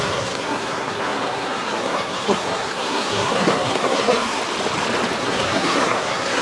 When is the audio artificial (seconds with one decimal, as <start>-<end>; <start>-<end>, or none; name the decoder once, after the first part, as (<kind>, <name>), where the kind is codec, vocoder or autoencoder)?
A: 0.0-4.4 (codec, SNAC); 5.2-6.4